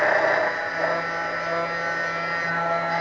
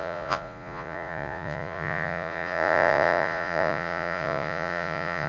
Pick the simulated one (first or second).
second